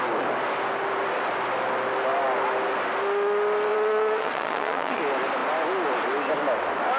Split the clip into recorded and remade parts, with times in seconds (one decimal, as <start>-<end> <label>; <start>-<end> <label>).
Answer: 0.0-3.7 recorded; 3.7-5.0 remade; 5.0-7.0 recorded